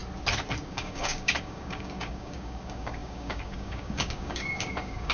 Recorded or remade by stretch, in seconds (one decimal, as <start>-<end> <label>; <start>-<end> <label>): 0.0-0.7 recorded; 0.7-5.1 remade